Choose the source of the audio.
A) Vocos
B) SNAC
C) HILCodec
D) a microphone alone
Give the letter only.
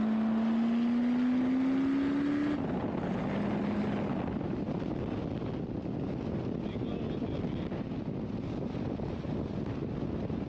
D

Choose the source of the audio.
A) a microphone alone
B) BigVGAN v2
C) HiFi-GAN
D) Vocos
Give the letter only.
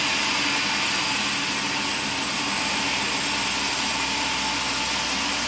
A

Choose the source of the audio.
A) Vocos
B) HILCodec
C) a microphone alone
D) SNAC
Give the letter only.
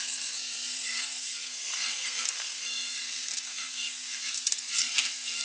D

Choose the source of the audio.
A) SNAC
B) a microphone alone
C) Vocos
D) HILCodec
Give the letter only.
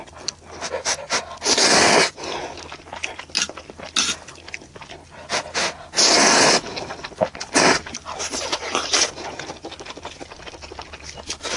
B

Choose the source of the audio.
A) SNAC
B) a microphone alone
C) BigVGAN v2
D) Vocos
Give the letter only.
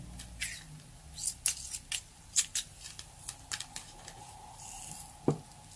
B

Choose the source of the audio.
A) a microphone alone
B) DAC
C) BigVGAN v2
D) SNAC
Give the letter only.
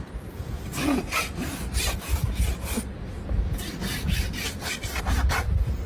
C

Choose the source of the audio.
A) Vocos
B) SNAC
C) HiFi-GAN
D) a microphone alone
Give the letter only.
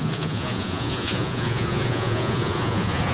A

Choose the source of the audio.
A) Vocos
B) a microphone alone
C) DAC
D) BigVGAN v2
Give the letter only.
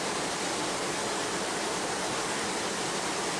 B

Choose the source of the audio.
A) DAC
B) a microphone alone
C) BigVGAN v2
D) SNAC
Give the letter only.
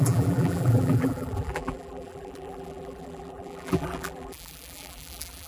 C